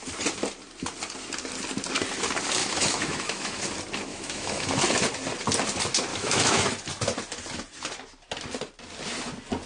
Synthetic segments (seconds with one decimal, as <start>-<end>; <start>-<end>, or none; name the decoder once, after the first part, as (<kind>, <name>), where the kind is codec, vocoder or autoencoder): 2.6-3.6 (autoencoder, DAC-VAE); 4.1-4.8; 6.1-6.7